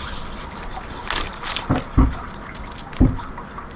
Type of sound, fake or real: real